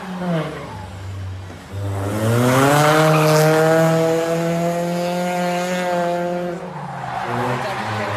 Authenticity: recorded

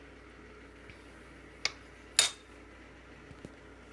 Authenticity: recorded